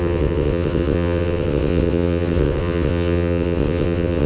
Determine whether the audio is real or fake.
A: fake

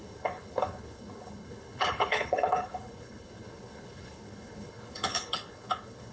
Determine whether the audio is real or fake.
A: fake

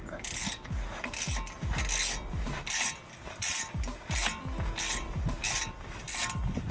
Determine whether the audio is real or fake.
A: real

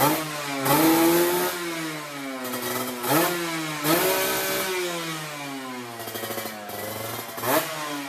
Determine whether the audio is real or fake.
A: real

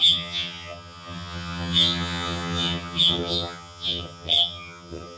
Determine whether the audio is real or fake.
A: fake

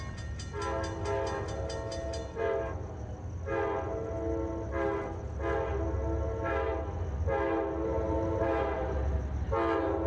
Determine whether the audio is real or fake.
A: real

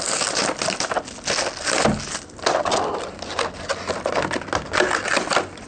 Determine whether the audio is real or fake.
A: real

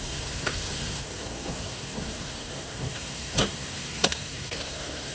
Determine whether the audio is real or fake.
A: fake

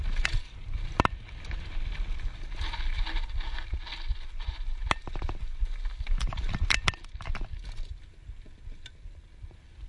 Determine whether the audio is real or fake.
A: real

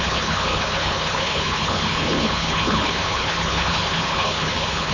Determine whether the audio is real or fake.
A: fake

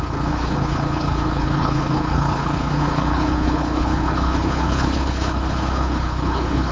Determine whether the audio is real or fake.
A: fake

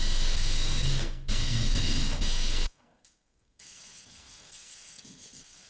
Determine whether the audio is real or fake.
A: fake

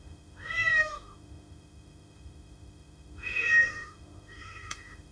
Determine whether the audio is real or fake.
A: fake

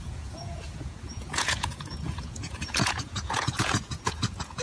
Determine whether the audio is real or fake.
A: fake